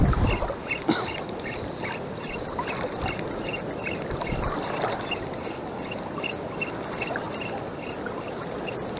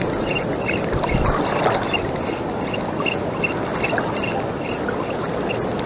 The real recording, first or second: second